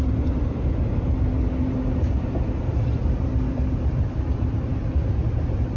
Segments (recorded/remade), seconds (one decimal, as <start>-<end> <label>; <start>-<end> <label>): 0.0-1.3 remade; 1.3-2.6 recorded; 2.6-5.8 remade

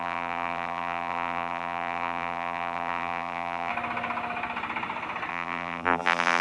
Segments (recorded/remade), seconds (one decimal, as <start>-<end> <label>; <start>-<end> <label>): 0.0-3.7 remade; 3.7-5.3 recorded; 5.3-6.4 remade

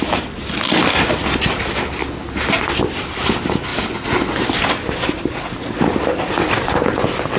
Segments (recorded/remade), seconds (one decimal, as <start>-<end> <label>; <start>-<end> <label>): 0.0-7.4 recorded